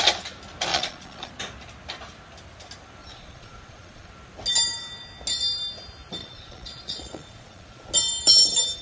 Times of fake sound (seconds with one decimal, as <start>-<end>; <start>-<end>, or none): 0.7-1.3; 3.0-4.1; 6.2-7.9